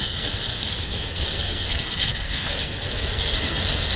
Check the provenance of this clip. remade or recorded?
remade